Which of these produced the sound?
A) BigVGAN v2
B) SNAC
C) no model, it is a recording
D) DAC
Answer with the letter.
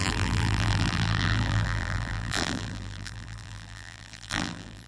A